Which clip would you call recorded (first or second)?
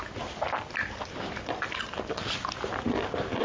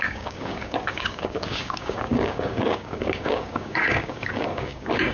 first